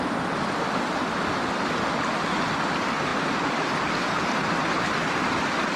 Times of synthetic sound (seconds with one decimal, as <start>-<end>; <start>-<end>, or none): 3.1-4.8